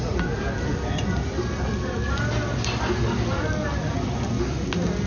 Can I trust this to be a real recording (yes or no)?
yes